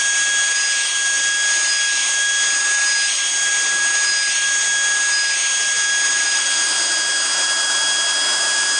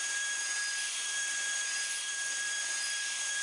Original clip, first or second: first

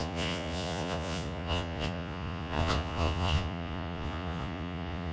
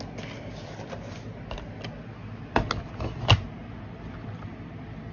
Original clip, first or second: second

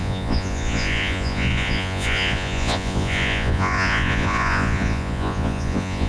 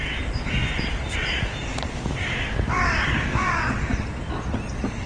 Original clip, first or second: second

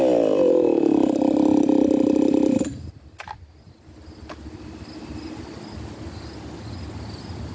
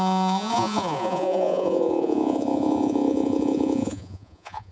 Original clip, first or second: first